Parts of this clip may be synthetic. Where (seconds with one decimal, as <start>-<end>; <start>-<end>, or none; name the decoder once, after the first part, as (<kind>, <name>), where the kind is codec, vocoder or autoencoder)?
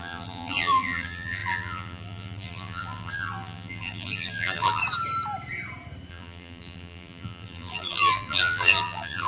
0.0-4.8 (vocoder, BigVGAN v2); 6.1-9.3